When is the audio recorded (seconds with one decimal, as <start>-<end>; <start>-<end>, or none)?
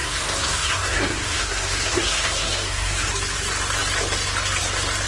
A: 3.1-5.1